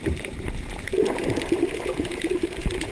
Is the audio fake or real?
fake